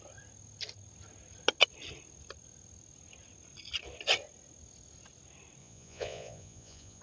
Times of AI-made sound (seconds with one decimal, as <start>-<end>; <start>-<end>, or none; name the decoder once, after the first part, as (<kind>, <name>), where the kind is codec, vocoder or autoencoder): 5.6-7.0 (vocoder, Vocos)